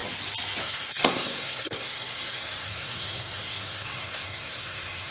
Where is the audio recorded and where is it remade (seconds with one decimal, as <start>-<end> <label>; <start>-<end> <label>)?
0.0-0.6 recorded; 0.6-5.1 remade